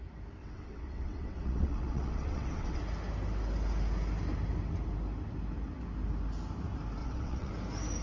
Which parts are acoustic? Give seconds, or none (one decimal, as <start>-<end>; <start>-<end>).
0.0-0.4; 2.8-7.0; 7.5-8.0

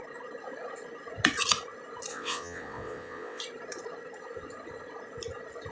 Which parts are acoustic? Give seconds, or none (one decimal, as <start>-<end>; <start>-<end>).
0.0-2.1; 3.4-5.7

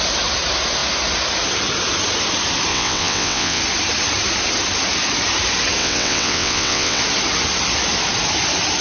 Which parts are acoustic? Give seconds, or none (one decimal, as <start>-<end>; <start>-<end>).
0.0-2.7; 3.6-5.8; 7.0-8.8